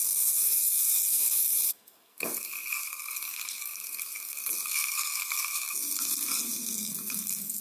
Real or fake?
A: fake